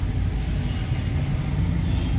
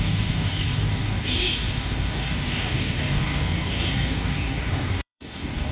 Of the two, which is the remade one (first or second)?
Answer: second